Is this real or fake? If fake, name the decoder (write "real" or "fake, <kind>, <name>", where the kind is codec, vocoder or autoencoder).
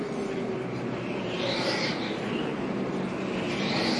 fake, vocoder, BigVGAN v2